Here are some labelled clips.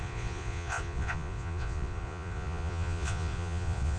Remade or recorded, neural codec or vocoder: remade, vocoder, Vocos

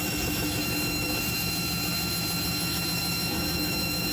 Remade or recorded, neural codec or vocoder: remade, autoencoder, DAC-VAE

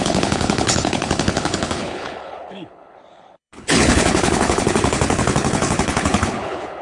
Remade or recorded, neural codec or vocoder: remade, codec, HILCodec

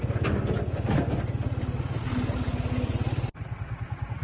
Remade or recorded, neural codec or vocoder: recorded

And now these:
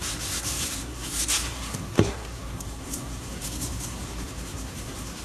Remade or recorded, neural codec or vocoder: remade, codec, SNAC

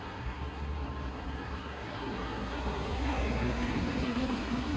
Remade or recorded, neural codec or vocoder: remade, codec, SNAC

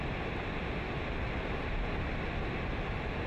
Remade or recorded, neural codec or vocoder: recorded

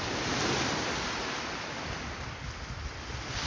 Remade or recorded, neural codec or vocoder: remade, vocoder, BigVGAN v2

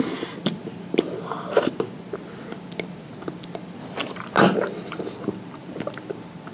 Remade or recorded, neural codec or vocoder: recorded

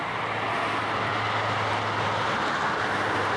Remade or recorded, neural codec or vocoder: recorded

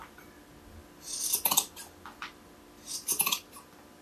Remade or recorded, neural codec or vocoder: recorded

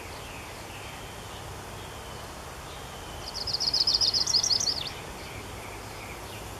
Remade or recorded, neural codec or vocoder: recorded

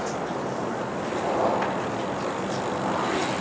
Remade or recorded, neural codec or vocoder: recorded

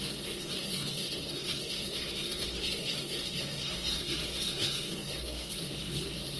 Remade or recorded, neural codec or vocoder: remade, codec, SNAC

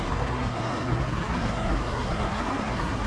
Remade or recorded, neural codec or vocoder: remade, codec, SNAC